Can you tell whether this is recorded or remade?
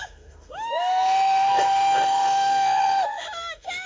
remade